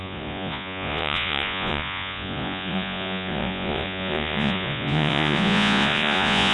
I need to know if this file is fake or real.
fake